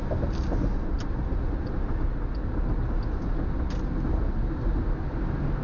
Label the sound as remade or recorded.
recorded